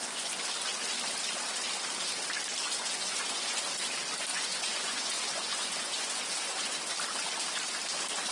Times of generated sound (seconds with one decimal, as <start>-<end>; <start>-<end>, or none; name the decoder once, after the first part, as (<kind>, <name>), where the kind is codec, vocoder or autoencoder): 0.0-0.5 (vocoder, Vocos); 2.6-3.6; 4.3-6.7